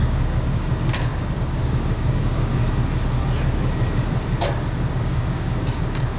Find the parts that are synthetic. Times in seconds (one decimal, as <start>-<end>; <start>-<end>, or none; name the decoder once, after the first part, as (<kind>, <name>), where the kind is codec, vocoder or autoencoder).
0.0-2.6 (codec, DAC); 5.0-6.2